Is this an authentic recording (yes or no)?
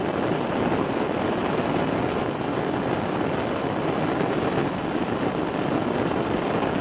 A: yes